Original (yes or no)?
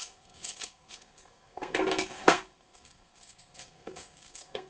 no